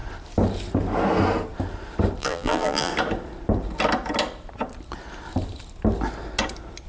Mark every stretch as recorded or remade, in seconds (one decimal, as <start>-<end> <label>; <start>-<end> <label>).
0.0-2.2 recorded; 2.2-2.9 remade; 2.9-6.9 recorded